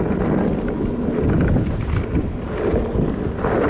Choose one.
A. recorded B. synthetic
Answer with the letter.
A